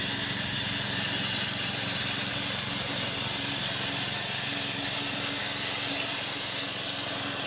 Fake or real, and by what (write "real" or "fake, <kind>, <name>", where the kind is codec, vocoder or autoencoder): real